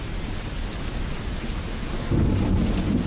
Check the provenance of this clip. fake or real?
real